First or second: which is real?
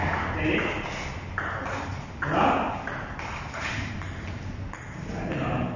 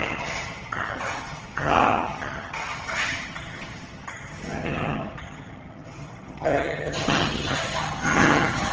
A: first